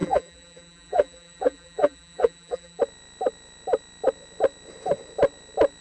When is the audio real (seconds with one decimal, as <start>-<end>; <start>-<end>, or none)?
2.8-5.8